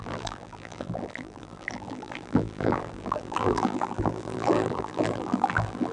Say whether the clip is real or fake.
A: fake